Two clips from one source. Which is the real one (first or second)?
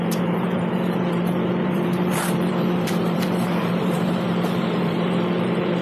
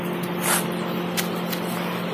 second